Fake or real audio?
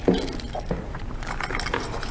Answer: real